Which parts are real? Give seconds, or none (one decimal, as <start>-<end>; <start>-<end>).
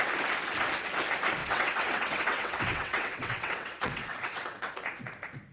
0.0-1.4; 4.7-5.5